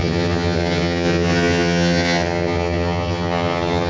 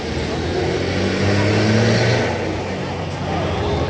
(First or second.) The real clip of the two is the second